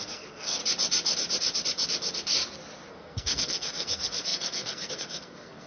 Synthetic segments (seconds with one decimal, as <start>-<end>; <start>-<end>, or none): 0.0-0.6; 2.9-5.7